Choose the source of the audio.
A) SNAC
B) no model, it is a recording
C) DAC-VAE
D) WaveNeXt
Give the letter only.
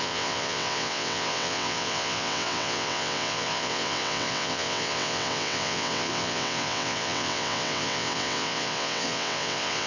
D